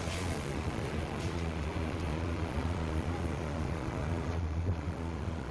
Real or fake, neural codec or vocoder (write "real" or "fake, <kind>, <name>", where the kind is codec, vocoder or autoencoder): fake, vocoder, Vocos